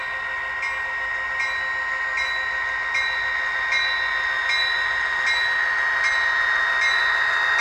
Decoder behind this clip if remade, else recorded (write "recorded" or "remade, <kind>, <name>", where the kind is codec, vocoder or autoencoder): recorded